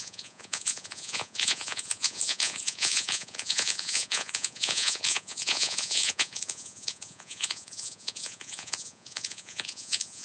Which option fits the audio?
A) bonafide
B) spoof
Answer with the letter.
B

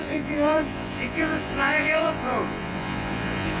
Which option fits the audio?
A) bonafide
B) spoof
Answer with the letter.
B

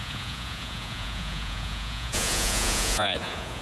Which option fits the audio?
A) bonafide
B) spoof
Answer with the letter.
B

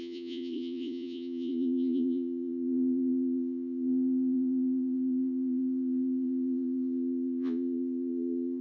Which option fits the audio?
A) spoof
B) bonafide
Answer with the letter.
A